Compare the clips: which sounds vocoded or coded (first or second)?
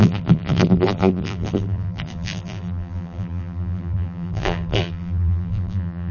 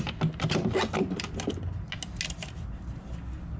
first